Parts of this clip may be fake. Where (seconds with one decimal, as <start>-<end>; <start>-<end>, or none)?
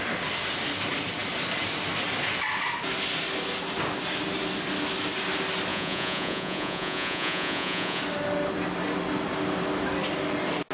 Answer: 5.7-8.0